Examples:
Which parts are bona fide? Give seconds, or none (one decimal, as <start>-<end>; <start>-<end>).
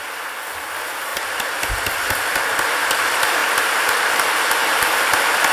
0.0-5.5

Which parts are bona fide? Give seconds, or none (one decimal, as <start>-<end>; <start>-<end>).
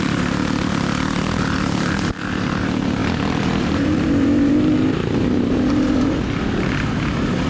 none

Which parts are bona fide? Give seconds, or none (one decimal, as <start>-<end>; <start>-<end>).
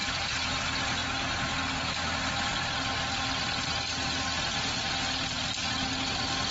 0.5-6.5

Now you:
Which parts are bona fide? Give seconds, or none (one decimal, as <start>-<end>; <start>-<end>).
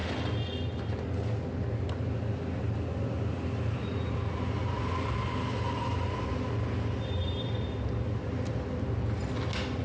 0.0-9.8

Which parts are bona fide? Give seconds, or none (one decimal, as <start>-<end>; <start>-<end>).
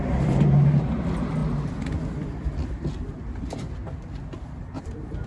1.4-4.6